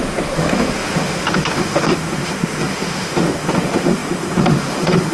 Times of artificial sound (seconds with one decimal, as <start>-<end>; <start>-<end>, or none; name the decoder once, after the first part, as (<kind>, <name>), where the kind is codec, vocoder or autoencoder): 0.0-5.1 (autoencoder, DAC-VAE)